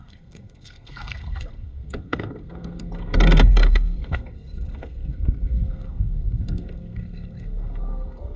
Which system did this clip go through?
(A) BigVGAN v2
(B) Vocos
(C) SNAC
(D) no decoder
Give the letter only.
C